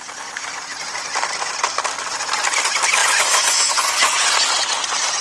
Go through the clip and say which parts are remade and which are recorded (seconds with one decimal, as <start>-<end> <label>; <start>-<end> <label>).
0.0-3.0 recorded; 3.0-4.3 remade; 4.3-5.2 recorded